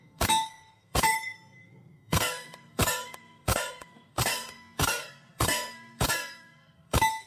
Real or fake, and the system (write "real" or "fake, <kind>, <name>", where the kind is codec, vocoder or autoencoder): fake, codec, SNAC